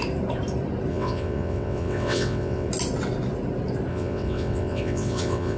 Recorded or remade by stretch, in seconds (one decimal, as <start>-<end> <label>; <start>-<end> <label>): 0.0-0.9 recorded; 0.9-2.7 remade; 2.7-3.9 recorded; 3.9-5.6 remade

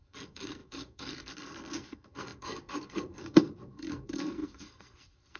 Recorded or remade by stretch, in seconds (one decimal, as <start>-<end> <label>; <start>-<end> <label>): 0.0-5.4 remade

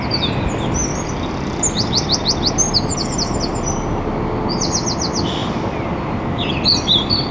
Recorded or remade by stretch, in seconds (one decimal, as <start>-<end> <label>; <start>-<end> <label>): 0.0-7.3 recorded

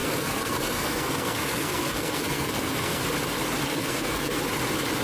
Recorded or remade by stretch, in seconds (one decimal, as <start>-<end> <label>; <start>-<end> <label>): 0.0-3.0 remade; 3.0-3.7 recorded; 3.7-4.4 remade; 4.4-5.0 recorded

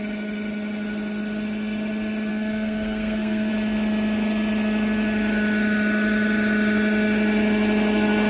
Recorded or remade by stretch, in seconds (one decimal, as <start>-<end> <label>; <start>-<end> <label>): 0.0-2.3 recorded; 2.3-3.5 remade; 3.5-8.3 recorded

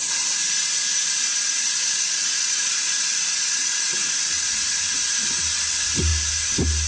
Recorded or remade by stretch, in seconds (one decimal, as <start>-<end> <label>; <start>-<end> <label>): 0.0-0.9 recorded; 0.9-5.0 remade; 5.0-6.9 recorded